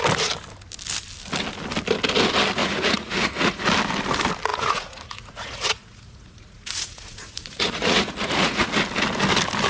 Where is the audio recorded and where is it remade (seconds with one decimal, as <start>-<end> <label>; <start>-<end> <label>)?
0.0-2.6 recorded; 2.6-3.6 remade; 3.6-4.5 recorded; 4.5-8.7 remade; 8.7-9.7 recorded